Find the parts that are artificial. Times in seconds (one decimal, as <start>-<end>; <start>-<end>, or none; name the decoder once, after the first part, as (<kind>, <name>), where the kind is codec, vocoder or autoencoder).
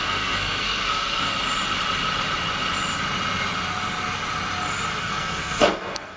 0.0-1.3 (codec, SNAC); 5.0-6.2